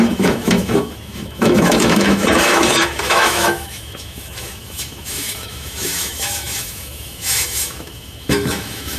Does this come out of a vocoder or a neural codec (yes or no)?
yes